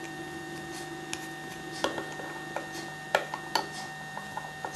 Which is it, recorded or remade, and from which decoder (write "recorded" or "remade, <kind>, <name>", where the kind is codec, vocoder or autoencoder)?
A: recorded